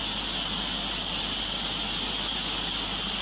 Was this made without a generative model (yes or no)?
yes